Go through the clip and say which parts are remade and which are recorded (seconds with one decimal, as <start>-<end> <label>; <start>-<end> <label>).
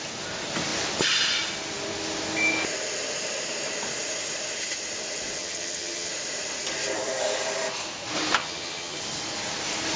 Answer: 0.0-5.4 recorded; 5.4-6.1 remade; 6.1-8.4 recorded; 8.4-9.0 remade; 9.0-10.0 recorded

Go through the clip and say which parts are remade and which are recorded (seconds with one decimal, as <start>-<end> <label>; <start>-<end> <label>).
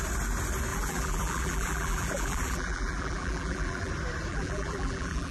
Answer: 0.0-0.7 recorded; 0.7-3.9 remade; 3.9-4.3 recorded; 4.3-5.3 remade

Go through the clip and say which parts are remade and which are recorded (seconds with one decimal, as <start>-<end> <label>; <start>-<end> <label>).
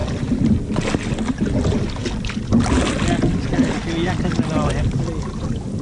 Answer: 0.0-5.8 recorded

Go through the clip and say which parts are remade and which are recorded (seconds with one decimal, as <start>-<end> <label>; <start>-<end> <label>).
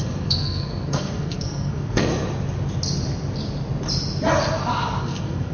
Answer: 0.0-2.1 remade; 2.1-5.0 recorded; 5.0-5.5 remade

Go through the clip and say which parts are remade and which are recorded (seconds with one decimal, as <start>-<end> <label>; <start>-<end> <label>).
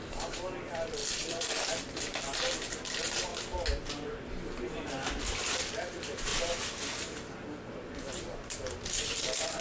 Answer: 0.0-3.3 remade; 3.3-3.8 recorded; 3.8-6.3 remade; 6.3-6.8 recorded; 6.8-9.6 remade